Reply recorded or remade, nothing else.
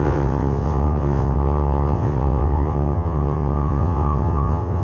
remade